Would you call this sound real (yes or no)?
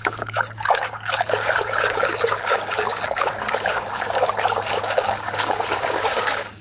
no